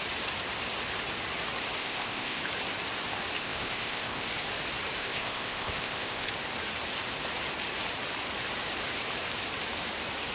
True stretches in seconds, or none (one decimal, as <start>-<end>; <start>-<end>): 0.0-1.8; 2.4-3.4; 4.3-5.0; 6.3-10.3